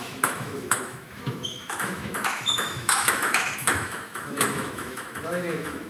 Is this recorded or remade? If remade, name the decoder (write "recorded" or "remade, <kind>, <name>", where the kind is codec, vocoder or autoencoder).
remade, autoencoder, DAC-VAE